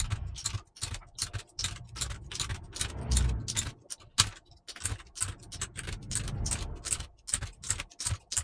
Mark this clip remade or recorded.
recorded